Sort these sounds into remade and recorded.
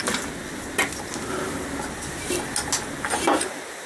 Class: recorded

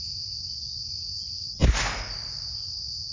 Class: recorded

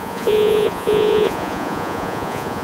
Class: remade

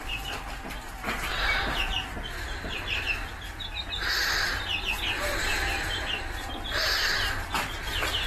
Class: remade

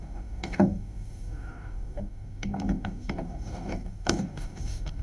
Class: remade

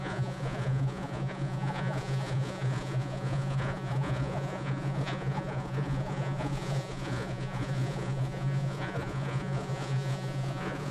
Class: remade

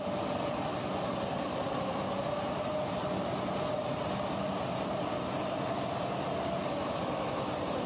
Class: recorded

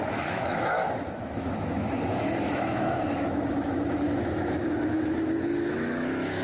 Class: remade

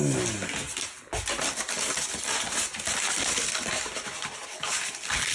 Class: recorded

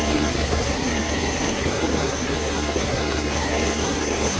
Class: remade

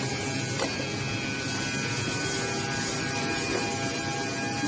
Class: recorded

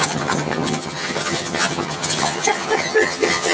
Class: remade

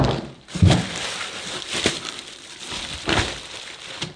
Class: remade